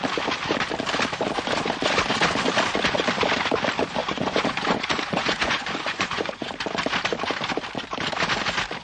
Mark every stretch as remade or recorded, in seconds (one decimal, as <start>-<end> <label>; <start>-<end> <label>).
0.0-4.0 recorded; 4.0-6.5 remade; 6.5-8.8 recorded

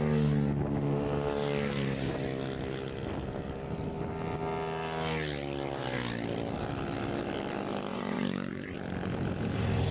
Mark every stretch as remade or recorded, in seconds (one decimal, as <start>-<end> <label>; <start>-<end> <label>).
0.0-7.9 recorded; 7.9-8.8 remade; 8.8-9.9 recorded

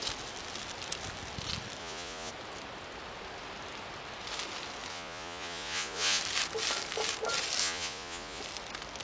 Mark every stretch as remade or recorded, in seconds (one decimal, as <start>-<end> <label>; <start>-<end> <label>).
0.0-1.8 recorded; 1.8-2.3 remade; 2.3-4.9 recorded; 4.9-6.2 remade; 6.2-7.6 recorded; 7.6-8.4 remade; 8.4-9.0 recorded

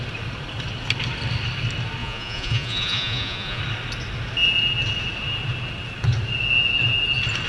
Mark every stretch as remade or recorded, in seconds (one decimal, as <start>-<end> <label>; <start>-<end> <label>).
0.0-2.0 recorded; 2.0-3.6 remade; 3.6-7.5 recorded

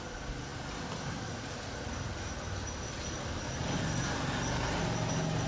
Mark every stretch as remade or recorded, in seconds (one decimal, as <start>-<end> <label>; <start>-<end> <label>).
0.0-5.5 recorded